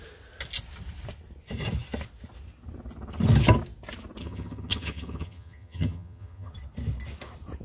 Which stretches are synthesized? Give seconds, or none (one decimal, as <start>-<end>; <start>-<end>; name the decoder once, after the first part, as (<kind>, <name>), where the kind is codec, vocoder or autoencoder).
4.2-6.5 (vocoder, HiFi-GAN)